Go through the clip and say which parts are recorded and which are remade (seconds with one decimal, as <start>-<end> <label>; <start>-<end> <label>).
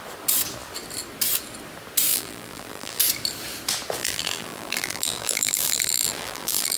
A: 0.0-2.1 recorded; 2.1-3.0 remade; 3.0-4.0 recorded; 4.0-6.8 remade